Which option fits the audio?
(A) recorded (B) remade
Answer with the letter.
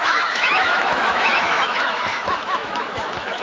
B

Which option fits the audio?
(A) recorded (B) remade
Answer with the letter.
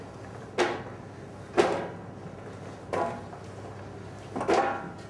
A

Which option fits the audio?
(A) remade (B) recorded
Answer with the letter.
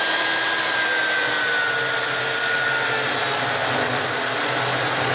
B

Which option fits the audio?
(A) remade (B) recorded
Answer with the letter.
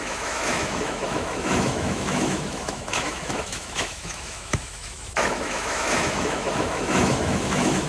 A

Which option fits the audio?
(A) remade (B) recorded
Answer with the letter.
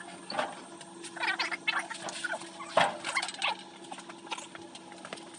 B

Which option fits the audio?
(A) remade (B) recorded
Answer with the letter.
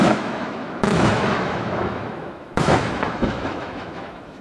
A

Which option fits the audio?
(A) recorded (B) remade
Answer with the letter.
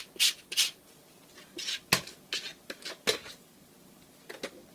A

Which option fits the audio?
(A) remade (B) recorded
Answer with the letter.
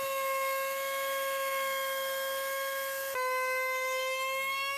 A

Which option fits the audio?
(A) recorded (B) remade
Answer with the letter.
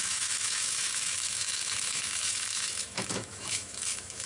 B